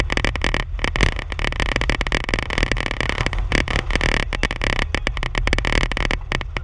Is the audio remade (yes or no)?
no